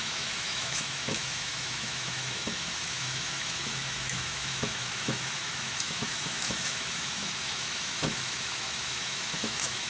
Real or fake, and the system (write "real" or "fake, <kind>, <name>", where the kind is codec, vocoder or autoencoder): fake, autoencoder, DAC-VAE